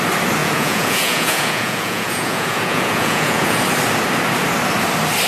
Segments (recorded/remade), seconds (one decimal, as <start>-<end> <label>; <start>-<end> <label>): 0.0-0.4 recorded; 0.4-3.6 remade; 3.6-5.3 recorded